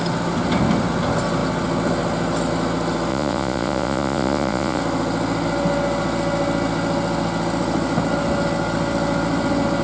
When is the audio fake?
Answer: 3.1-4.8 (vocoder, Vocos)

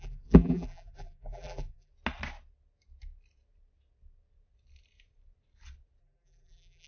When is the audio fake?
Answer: 0.0-1.9 (vocoder, BigVGAN v2); 6.0-6.9

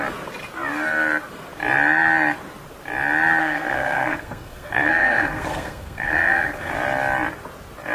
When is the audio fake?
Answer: 3.4-6.7 (codec, SNAC)

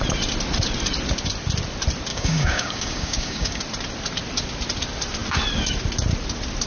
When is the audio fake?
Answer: 2.1-3.6 (codec, DAC)

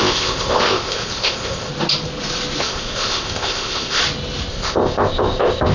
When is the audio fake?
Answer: 0.0-1.7 (codec, ZipCodec); 2.6-4.0; 4.5-5.7

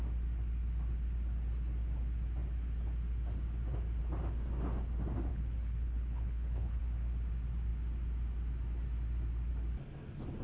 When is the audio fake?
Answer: 5.3-6.8 (codec, HILCodec)

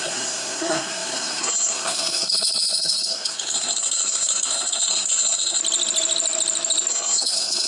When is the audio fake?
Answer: 0.0-5.6 (codec, SNAC); 6.9-7.7